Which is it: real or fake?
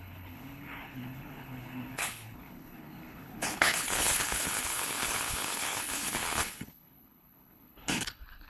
fake